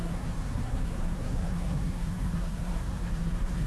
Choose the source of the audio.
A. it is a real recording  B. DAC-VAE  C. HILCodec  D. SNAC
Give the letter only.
D